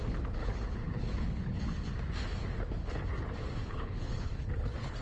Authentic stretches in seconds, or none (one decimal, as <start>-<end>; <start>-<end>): 0.0-0.4; 1.6-3.6